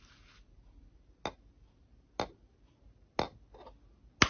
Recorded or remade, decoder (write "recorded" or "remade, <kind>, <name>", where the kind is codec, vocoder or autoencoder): recorded